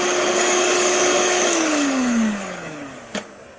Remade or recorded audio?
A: remade